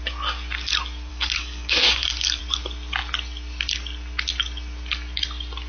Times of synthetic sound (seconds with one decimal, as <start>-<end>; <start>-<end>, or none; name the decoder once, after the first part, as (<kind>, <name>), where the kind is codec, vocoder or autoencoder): 1.1-2.4 (codec, DAC)